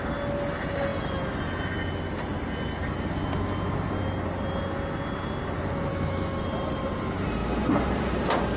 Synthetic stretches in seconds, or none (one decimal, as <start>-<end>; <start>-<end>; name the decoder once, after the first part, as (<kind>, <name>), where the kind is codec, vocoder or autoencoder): 5.9-6.4 (autoencoder, DAC-VAE)